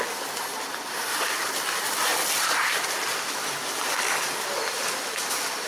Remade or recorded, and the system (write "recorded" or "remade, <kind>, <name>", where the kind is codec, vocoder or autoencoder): recorded